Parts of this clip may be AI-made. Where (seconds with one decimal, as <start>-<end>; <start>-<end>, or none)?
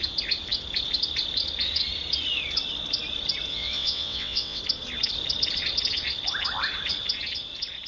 3.5-4.6